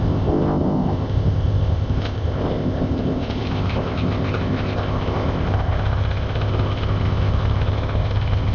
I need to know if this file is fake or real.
fake